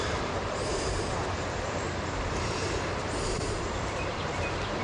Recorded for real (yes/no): no